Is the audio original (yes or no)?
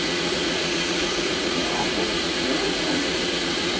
no